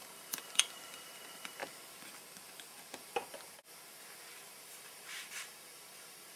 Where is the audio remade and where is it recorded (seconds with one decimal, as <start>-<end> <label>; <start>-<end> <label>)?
0.0-1.6 remade; 1.6-4.6 recorded; 4.6-6.4 remade